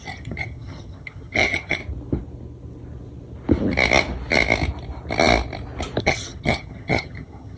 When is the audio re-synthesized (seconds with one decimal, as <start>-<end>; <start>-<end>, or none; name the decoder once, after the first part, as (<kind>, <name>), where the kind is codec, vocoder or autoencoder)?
0.0-1.8 (vocoder, HiFi-GAN); 6.0-7.6